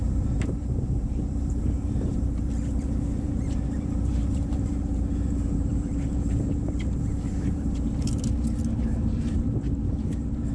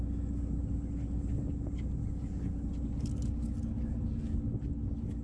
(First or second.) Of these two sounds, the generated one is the first